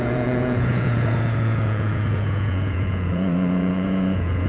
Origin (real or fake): fake